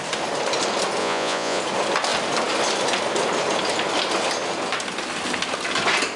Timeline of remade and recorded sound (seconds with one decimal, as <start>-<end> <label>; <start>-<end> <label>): 0.0-1.0 recorded; 1.0-1.6 remade; 1.6-6.2 recorded